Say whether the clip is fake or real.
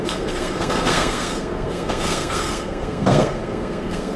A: fake